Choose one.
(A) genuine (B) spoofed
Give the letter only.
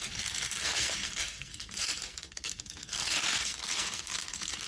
B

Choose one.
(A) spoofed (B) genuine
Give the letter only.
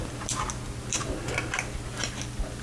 B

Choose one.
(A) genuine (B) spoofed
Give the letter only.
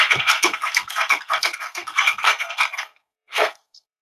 B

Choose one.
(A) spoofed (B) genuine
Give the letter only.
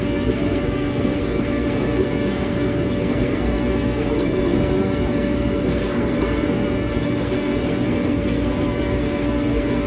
A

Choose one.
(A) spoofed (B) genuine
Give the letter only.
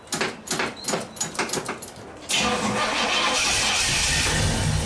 B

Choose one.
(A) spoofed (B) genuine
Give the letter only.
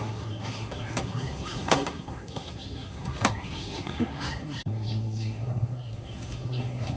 A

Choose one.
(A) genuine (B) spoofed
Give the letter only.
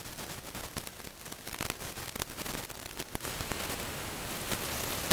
A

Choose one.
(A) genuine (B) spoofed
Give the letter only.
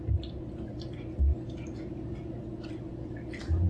A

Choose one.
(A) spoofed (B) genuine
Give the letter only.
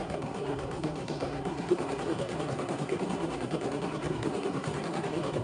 A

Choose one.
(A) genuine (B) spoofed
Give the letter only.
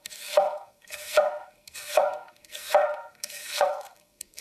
B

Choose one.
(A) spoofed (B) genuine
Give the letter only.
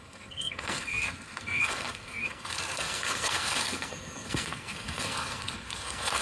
A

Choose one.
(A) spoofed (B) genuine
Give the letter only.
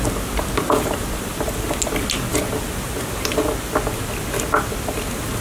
B